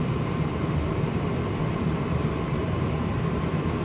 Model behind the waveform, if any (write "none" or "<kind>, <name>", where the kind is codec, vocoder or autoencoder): vocoder, BigVGAN v2